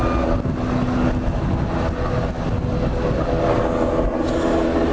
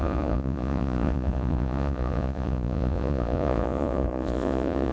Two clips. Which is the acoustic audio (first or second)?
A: first